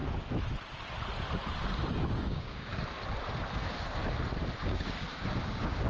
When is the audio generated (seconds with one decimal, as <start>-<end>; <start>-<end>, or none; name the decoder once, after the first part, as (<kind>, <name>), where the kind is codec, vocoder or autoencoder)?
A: 1.9-2.7 (codec, DAC); 3.5-4.0; 4.6-5.9